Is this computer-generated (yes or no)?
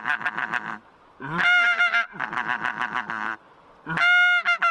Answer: no